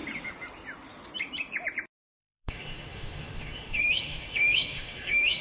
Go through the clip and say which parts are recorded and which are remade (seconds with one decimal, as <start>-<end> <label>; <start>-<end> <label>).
0.0-2.2 recorded; 2.2-5.4 remade